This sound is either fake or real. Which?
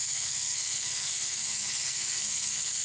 fake